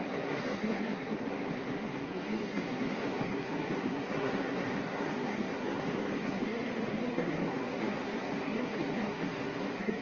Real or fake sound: fake